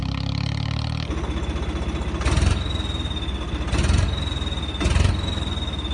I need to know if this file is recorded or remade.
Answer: recorded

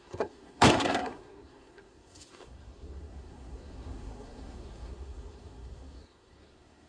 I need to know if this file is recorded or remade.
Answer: remade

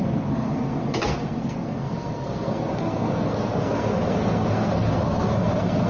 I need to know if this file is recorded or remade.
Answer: remade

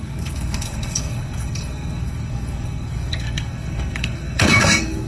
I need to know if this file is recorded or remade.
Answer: remade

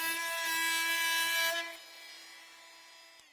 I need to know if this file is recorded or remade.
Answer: recorded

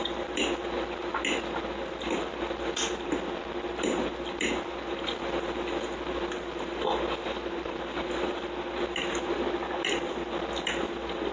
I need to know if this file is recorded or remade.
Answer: recorded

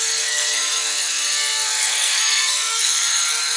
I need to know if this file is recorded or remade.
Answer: remade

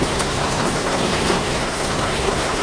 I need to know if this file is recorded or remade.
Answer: remade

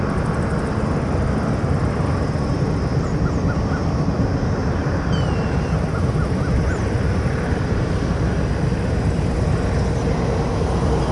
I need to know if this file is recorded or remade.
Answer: recorded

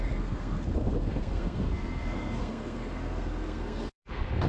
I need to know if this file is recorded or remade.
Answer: remade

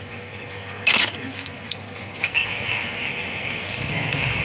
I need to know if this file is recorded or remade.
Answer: remade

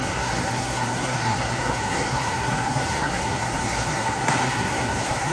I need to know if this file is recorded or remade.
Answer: remade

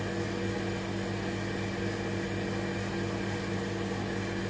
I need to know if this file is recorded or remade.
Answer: recorded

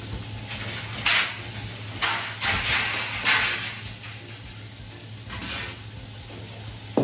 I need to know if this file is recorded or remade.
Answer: recorded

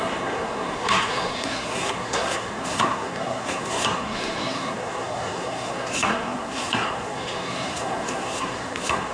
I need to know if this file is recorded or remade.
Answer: remade